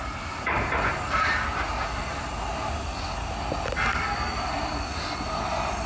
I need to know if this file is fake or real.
real